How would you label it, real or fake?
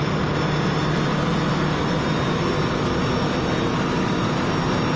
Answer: real